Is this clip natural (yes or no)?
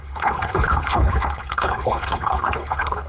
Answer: no